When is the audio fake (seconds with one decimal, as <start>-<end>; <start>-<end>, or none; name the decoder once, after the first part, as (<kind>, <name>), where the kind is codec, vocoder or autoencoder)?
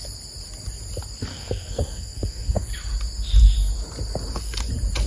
1.3-2.7 (codec, SNAC)